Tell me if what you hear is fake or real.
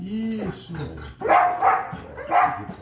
real